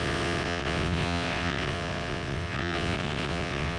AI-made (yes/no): yes